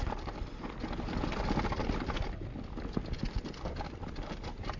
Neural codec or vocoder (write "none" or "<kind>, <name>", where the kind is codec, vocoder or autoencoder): none